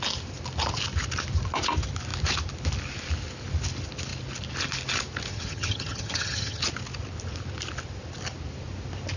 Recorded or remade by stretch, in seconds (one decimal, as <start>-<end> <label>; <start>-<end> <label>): 0.0-5.3 recorded; 5.3-6.6 remade; 6.6-9.2 recorded